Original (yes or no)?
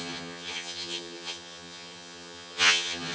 no